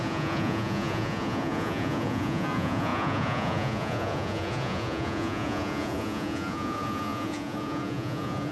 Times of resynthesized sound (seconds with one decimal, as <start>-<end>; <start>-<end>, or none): 0.0-8.5